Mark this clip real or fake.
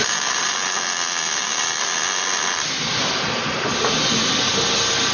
real